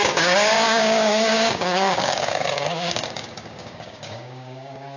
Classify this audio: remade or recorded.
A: remade